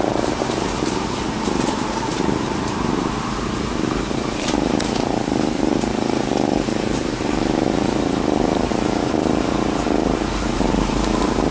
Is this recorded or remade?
remade